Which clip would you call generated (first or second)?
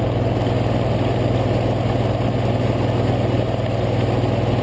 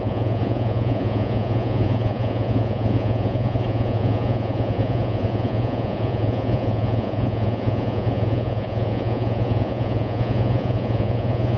second